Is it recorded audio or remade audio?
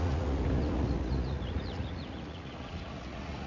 remade